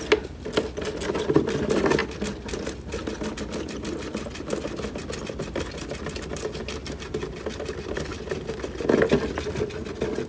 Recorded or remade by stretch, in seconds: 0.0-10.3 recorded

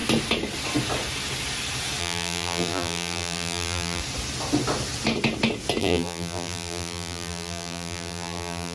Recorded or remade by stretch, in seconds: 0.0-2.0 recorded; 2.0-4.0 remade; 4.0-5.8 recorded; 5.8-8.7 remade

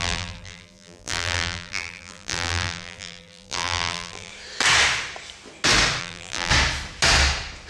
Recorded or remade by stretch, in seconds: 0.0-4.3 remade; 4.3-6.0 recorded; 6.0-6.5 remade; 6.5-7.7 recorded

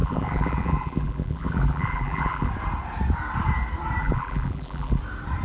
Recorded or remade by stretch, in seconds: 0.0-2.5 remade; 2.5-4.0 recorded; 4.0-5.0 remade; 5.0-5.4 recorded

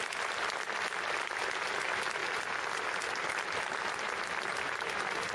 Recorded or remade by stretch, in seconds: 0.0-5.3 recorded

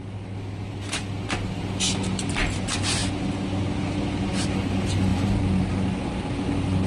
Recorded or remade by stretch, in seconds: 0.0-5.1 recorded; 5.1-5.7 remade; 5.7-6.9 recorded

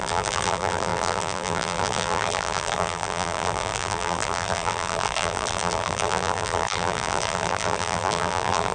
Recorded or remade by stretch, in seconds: 0.0-8.7 remade